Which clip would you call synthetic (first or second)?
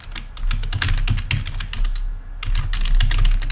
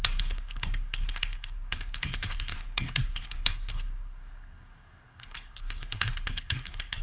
second